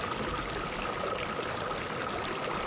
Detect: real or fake real